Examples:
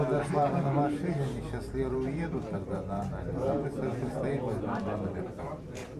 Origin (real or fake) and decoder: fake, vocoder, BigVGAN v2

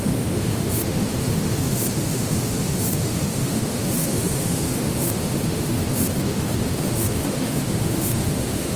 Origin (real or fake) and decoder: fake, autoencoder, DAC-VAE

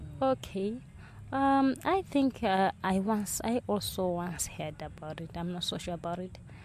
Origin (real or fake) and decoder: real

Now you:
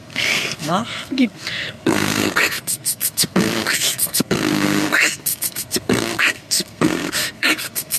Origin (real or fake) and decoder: fake, codec, SNAC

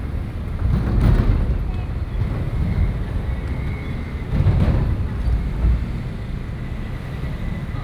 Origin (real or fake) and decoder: real